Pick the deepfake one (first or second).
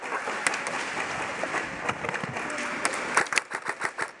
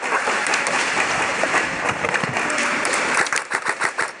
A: second